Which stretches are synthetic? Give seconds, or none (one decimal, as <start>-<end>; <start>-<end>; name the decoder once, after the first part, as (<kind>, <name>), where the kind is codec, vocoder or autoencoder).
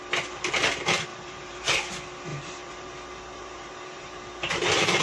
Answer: 1.1-1.9 (vocoder, BigVGAN v2); 2.3-5.0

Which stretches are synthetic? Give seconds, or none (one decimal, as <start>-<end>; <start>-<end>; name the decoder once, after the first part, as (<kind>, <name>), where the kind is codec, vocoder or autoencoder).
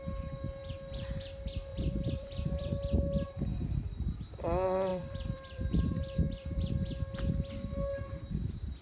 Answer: 1.7-2.7 (vocoder, BigVGAN v2); 4.9-6.7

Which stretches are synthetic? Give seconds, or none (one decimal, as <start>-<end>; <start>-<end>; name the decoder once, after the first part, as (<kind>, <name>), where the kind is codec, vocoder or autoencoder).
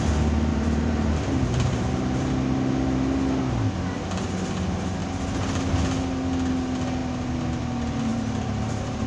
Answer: 0.5-2.3 (vocoder, BigVGAN v2); 8.1-9.1